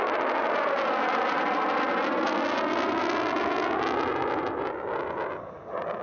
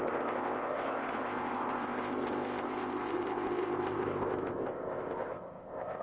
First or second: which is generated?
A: second